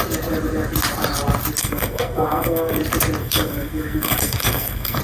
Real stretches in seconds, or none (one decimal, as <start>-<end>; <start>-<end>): 0.0-1.6; 2.8-3.2

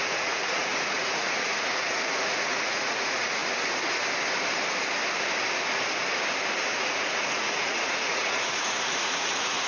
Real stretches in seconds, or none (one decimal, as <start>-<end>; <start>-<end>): 3.4-6.8

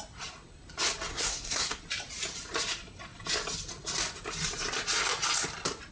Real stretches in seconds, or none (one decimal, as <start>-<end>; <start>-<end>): 0.0-1.1; 1.8-5.9

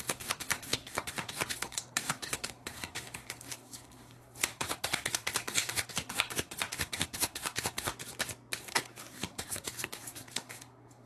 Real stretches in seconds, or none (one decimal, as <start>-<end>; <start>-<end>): 7.9-8.6

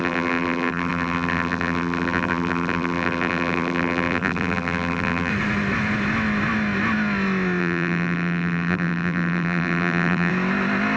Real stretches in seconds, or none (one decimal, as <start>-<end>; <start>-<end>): 5.3-7.6; 10.3-11.0

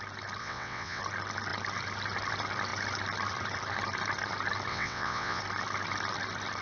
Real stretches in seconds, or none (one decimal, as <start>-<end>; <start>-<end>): 0.0-0.4; 1.0-4.7; 5.4-6.6